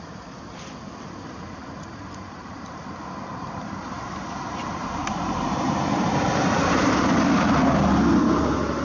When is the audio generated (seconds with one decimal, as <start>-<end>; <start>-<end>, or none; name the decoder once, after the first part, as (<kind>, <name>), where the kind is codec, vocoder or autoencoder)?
1.6-2.8 (vocoder, BigVGAN v2); 3.3-7.1